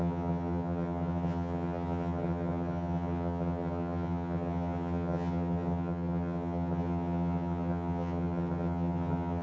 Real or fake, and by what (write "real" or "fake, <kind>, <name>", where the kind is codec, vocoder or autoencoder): fake, vocoder, HiFi-GAN